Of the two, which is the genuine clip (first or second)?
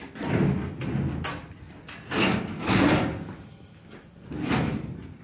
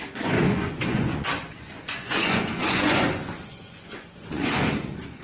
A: first